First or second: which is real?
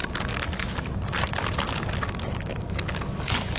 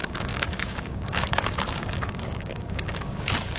first